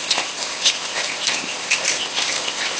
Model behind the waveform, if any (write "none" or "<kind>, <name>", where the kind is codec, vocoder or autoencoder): codec, ZipCodec